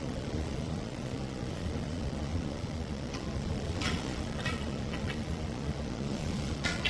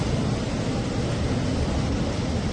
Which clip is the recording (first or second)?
second